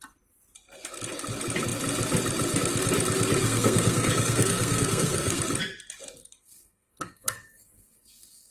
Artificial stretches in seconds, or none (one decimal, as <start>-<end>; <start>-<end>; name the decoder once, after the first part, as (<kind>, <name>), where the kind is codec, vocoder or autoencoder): 3.4-5.4 (codec, SNAC); 6.2-8.5